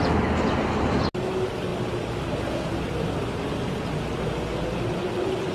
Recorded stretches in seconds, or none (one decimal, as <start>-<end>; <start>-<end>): 0.0-5.5